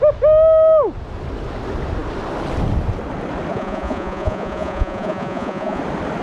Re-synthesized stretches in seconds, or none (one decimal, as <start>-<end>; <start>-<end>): 3.5-5.8